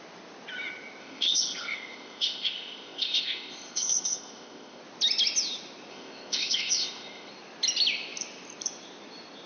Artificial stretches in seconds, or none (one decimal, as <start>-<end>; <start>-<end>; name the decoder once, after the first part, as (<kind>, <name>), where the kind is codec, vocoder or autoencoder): 1.0-4.8 (codec, ZipCodec); 5.9-7.3